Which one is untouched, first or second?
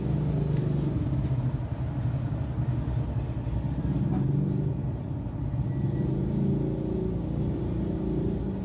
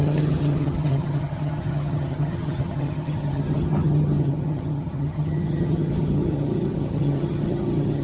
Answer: first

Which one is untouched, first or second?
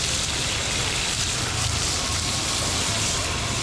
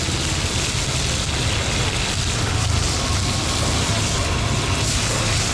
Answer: second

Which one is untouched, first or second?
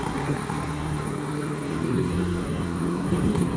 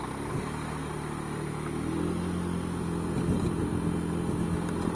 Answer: second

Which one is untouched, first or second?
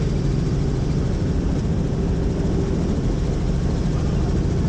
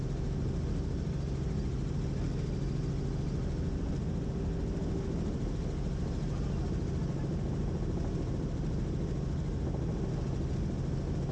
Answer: second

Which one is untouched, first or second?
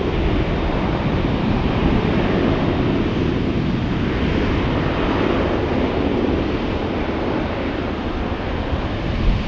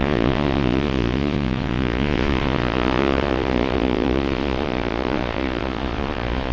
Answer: first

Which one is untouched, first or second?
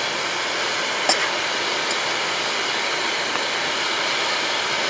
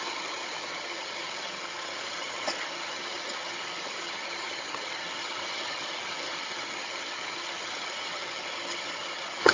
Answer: first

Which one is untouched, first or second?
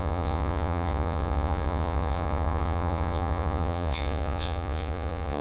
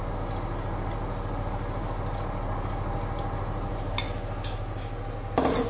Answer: second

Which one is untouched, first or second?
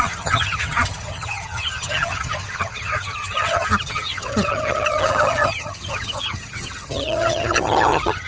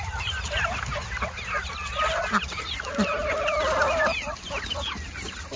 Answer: second